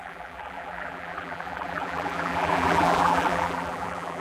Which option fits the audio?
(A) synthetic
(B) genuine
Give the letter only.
A